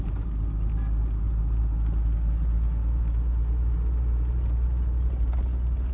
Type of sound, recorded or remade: recorded